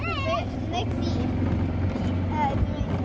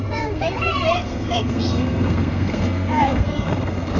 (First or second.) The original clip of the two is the first